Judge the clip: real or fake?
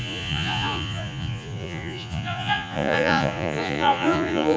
fake